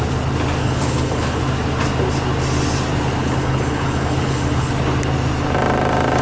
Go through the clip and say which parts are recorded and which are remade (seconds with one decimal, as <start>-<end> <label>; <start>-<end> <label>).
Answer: 0.0-0.6 recorded; 0.6-1.4 remade; 1.4-3.2 recorded; 3.2-4.7 remade; 4.7-6.2 recorded